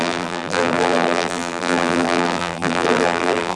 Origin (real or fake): fake